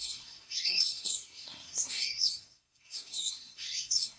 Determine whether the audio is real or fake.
fake